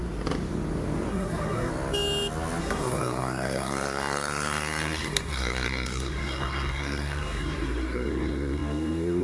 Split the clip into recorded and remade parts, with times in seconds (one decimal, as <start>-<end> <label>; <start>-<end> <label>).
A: 0.0-1.1 recorded; 1.1-1.7 remade; 1.7-2.6 recorded; 2.6-9.2 remade